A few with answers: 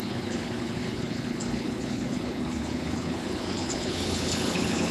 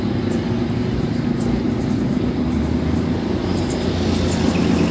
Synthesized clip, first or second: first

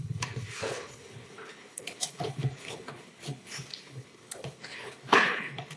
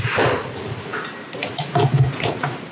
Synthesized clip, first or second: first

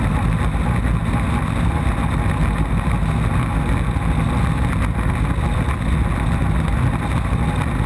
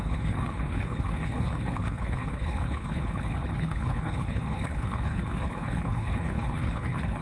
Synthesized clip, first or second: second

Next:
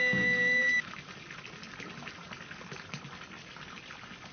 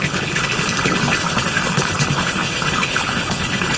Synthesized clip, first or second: second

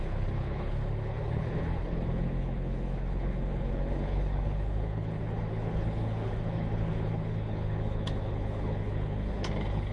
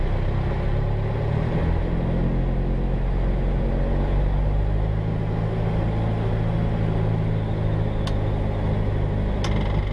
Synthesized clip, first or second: first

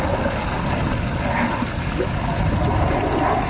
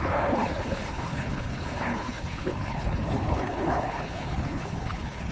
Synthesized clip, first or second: second